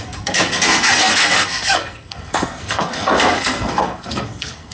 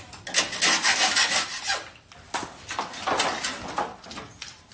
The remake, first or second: first